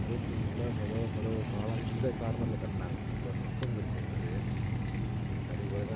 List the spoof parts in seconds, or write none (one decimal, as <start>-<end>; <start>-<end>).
none